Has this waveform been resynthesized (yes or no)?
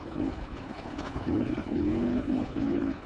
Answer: yes